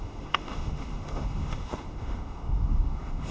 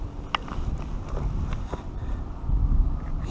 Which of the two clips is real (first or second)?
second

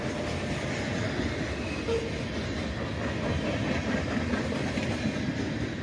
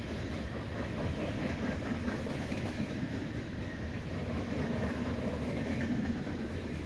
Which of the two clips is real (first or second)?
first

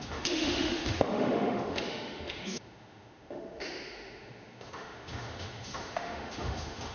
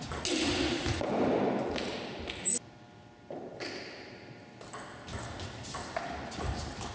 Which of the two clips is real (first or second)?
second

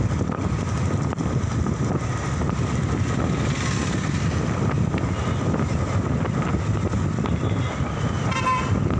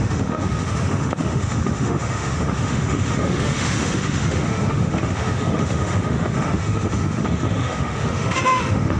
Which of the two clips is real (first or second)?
first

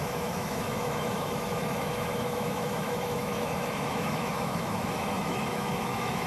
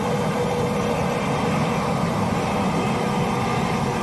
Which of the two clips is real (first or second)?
second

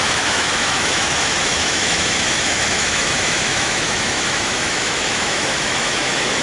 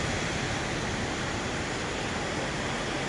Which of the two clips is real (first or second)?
second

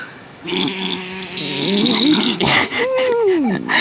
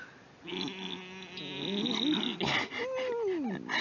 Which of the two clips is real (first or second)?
second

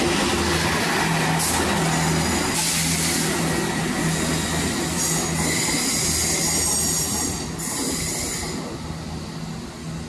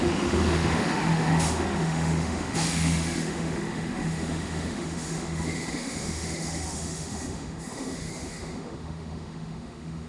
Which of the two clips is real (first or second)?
first